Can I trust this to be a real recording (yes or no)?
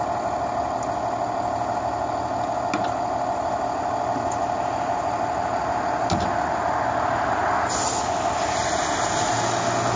yes